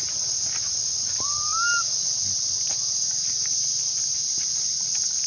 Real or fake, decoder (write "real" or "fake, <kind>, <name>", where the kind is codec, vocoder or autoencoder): real